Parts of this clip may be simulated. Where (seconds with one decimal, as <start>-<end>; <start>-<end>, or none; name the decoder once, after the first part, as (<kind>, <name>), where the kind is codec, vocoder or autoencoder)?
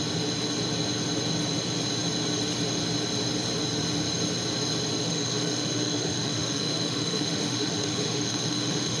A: 5.0-9.0 (autoencoder, DAC-VAE)